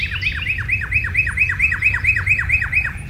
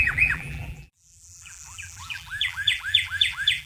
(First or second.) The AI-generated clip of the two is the second